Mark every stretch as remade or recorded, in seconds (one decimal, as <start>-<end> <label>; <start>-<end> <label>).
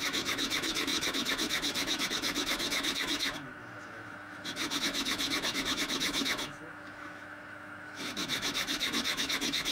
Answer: 0.0-9.7 remade